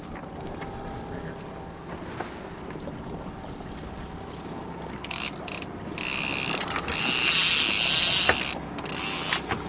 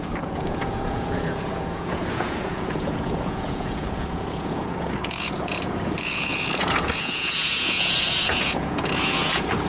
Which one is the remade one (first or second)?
second